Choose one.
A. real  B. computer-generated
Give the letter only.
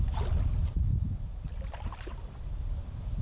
A